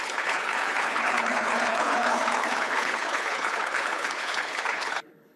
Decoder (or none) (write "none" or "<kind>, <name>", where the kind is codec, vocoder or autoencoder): codec, HILCodec